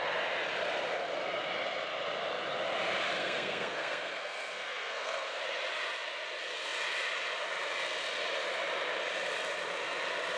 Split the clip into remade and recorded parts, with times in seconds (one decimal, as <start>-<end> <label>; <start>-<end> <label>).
0.0-3.2 recorded; 3.2-5.4 remade; 5.4-10.4 recorded